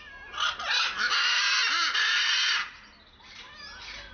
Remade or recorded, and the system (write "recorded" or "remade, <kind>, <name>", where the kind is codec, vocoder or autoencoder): recorded